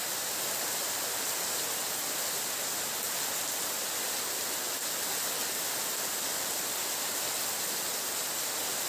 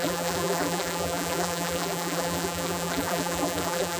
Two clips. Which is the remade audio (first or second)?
second